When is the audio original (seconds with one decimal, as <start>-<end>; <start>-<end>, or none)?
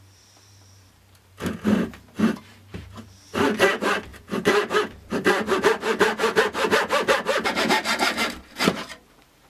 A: none